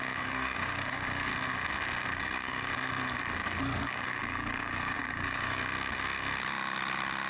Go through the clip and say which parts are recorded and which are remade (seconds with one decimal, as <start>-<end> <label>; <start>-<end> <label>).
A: 0.0-1.3 remade; 1.3-2.2 recorded; 2.2-2.7 remade; 2.7-3.8 recorded; 3.8-5.6 remade; 5.6-7.3 recorded